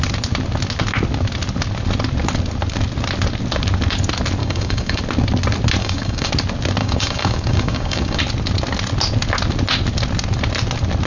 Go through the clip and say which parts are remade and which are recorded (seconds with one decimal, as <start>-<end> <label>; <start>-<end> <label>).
0.0-4.4 recorded; 4.4-5.0 remade; 5.0-5.8 recorded; 5.8-6.3 remade; 6.3-6.8 recorded; 6.8-8.2 remade; 8.2-11.1 recorded